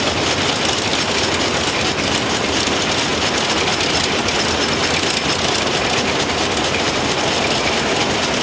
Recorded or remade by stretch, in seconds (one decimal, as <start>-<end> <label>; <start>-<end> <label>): 0.0-0.9 remade; 0.9-1.7 recorded; 1.7-3.1 remade; 3.1-6.6 recorded; 6.6-8.4 remade